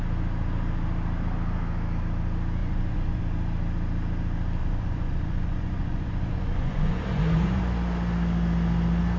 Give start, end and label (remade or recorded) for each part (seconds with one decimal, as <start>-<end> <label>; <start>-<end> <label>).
0.0-2.6 recorded; 2.6-3.2 remade; 3.2-4.6 recorded; 4.6-7.6 remade; 7.6-9.2 recorded